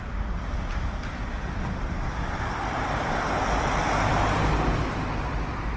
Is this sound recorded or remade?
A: remade